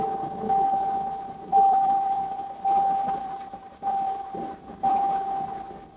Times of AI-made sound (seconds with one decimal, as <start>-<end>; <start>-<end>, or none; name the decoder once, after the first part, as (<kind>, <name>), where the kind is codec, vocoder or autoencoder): 1.5-5.1 (vocoder, BigVGAN v2)